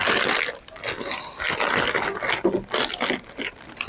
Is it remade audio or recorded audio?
recorded